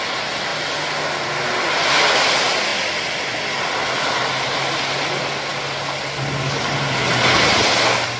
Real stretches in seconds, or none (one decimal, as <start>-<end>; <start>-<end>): 0.0-8.2